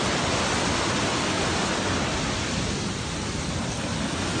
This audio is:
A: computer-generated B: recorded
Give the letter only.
B